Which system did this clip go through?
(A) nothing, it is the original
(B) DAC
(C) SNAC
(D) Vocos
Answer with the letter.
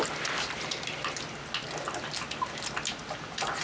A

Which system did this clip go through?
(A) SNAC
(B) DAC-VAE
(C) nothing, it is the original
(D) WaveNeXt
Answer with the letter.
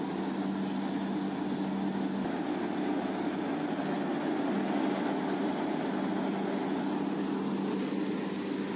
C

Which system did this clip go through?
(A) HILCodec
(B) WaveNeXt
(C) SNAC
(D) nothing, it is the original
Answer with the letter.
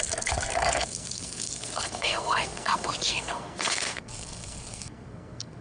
C